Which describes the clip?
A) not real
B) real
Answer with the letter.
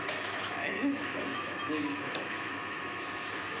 A